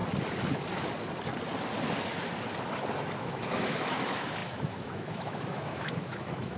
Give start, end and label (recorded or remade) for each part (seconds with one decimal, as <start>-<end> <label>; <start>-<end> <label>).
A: 0.0-3.2 recorded; 3.2-6.6 remade